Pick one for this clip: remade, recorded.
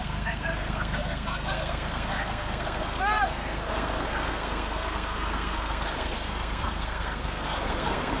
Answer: remade